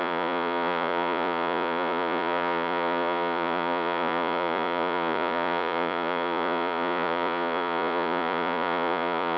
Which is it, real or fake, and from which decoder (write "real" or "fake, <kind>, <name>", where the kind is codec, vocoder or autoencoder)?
fake, vocoder, Vocos